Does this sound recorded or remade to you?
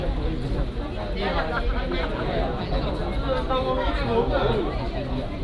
recorded